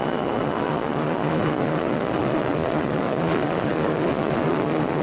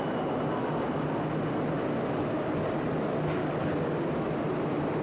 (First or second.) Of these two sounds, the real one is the second